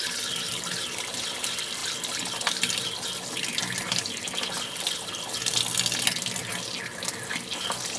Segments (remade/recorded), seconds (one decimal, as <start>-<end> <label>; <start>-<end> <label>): 0.0-8.0 recorded